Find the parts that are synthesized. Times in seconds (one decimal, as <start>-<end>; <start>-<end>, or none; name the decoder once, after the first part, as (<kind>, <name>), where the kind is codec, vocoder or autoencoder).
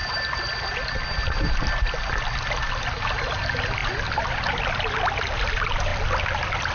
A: none